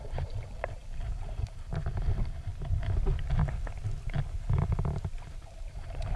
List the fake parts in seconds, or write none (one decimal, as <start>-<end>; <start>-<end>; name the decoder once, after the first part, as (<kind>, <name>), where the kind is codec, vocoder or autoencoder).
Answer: 0.0-2.5 (vocoder, BigVGAN v2); 5.6-6.2